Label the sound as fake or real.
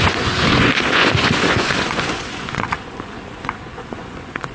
fake